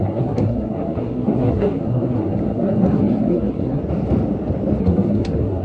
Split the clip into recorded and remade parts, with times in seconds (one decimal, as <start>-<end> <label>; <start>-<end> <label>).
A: 0.0-3.8 remade; 3.8-4.8 recorded; 4.8-5.6 remade